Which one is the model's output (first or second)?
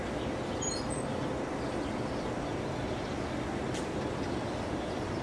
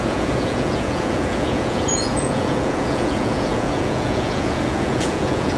second